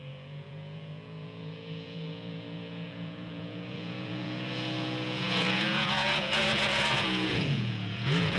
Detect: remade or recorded remade